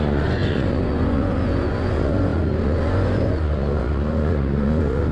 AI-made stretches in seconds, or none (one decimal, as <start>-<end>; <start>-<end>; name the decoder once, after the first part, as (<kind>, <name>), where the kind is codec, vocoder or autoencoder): 0.0-5.1 (vocoder, Vocos)